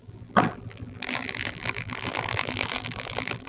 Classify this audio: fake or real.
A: fake